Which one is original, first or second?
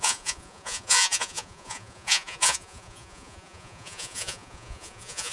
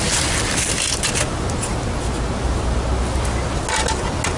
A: second